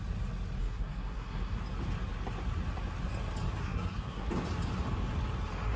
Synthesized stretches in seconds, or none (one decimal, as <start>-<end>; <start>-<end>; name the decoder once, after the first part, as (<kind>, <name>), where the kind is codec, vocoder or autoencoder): 0.6-1.6 (codec, SNAC); 3.6-4.3